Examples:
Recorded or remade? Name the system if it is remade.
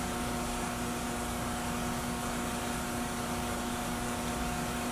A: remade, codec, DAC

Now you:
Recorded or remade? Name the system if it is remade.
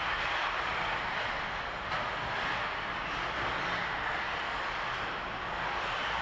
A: recorded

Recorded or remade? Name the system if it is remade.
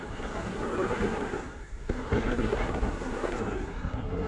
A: remade, codec, SNAC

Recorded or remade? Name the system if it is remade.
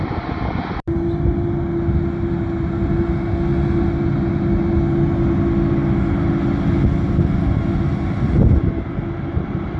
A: recorded